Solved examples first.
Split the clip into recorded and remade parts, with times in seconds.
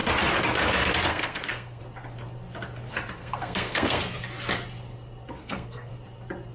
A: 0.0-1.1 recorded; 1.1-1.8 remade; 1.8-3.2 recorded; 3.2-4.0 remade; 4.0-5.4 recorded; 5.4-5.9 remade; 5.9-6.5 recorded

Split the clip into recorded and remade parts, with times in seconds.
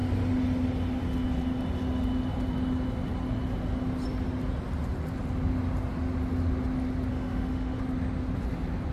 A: 0.0-7.1 recorded; 7.1-7.8 remade; 7.8-8.9 recorded